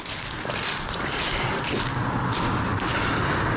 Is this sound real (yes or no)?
yes